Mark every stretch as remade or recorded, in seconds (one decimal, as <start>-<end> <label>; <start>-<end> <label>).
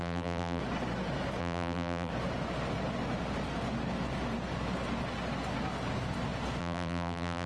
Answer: 0.0-0.6 remade; 0.6-1.4 recorded; 1.4-2.1 remade; 2.1-6.6 recorded; 6.6-7.5 remade